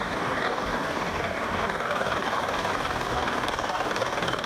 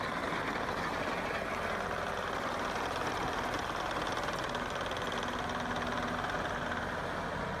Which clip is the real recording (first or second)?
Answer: second